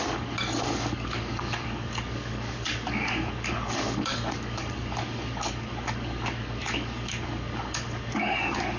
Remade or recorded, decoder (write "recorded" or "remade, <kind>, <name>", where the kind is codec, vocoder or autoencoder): remade, codec, DAC